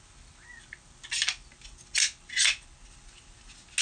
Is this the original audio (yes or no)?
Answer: yes